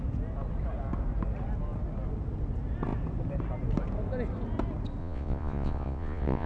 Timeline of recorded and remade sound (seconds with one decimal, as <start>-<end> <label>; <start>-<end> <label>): 0.0-5.0 recorded; 5.0-6.5 remade